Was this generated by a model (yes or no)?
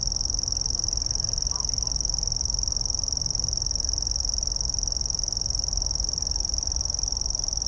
no